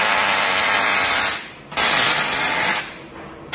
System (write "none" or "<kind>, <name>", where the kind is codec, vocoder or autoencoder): none